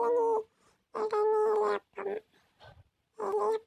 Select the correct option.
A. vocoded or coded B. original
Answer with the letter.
B